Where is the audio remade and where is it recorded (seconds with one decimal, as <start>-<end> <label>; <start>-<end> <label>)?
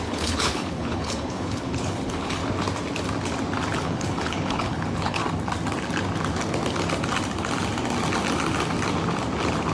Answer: 0.0-2.4 remade; 2.4-3.8 recorded; 3.8-5.2 remade; 5.2-9.7 recorded